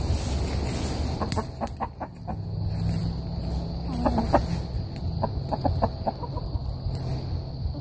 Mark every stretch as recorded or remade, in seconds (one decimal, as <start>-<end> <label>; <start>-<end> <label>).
0.0-7.8 recorded